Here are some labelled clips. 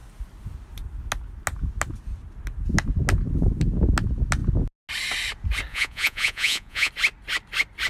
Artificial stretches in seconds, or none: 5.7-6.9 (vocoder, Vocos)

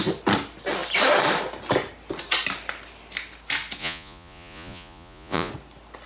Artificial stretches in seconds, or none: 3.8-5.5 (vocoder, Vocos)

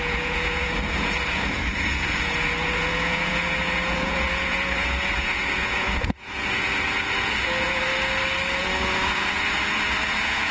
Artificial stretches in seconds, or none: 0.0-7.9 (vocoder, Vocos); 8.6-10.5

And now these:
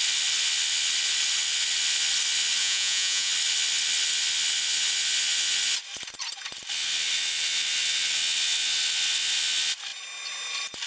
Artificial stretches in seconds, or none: 2.6-3.3 (vocoder, Vocos)

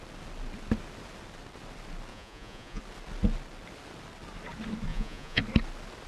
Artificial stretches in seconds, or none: 2.1-2.8 (vocoder, Vocos); 4.9-5.4